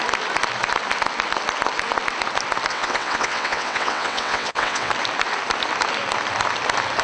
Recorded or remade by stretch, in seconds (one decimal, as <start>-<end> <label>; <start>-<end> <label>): 0.0-2.7 recorded; 2.7-4.9 remade; 4.9-7.0 recorded